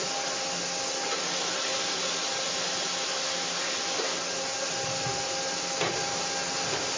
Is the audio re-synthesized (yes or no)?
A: no